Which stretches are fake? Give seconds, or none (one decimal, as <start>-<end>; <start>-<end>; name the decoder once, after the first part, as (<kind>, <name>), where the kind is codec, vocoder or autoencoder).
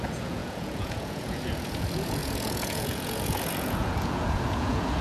0.0-5.0 (vocoder, Vocos)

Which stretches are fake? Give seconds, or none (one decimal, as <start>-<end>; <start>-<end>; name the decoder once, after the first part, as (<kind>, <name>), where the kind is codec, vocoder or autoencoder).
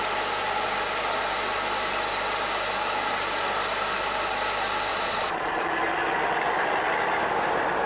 4.9-5.7 (vocoder, Vocos)